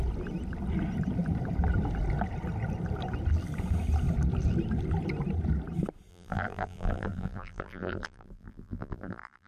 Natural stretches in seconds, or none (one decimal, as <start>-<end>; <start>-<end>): 0.0-6.1